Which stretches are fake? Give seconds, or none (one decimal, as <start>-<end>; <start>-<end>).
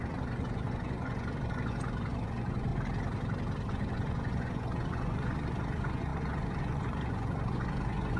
0.0-2.7; 3.7-8.2